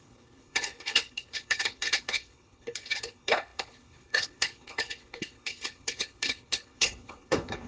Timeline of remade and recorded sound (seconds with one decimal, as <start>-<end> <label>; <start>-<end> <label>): 0.0-7.7 remade